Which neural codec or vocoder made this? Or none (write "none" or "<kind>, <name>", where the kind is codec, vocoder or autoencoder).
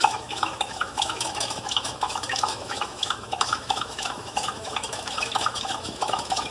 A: autoencoder, DAC-VAE